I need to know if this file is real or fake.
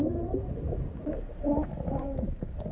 fake